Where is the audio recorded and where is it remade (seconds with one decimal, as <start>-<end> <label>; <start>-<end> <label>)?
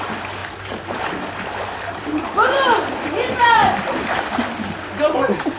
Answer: 0.0-3.6 remade; 3.6-5.6 recorded